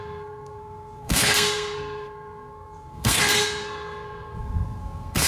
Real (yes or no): no